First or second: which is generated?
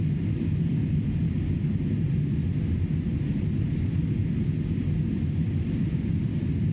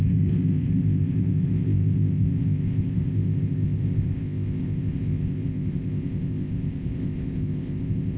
second